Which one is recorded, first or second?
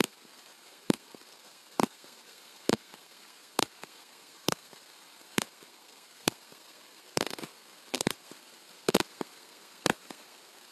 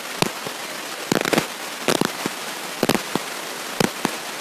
second